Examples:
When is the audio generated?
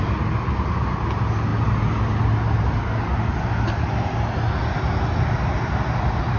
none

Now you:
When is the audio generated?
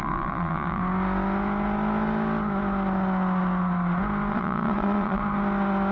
0.0-0.8 (vocoder, Vocos); 4.3-5.2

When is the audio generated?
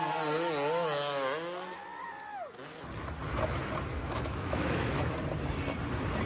3.9-5.1 (autoencoder, DAC-VAE)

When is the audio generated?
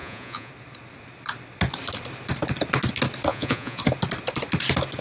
0.0-0.5 (vocoder, Vocos); 3.3-3.8